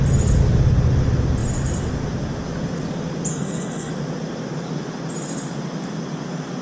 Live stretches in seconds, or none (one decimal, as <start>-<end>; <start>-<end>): 0.0-3.3; 3.9-6.6